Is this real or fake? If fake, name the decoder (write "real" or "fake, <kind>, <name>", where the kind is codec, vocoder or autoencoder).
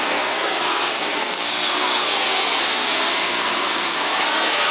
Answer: fake, codec, SNAC